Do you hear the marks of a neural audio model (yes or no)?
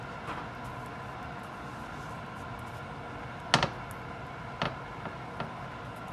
no